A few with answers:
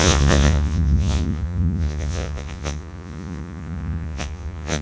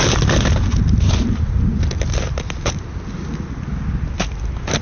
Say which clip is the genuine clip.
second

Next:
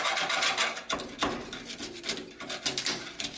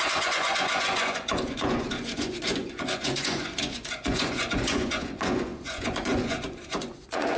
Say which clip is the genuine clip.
first